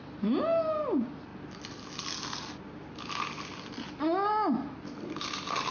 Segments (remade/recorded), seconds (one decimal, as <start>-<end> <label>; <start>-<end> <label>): 0.0-5.7 recorded